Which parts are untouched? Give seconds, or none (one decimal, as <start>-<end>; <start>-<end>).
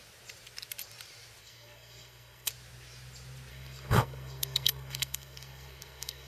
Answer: 0.0-1.4; 2.5-3.5